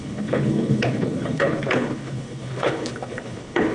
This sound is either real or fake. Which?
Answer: fake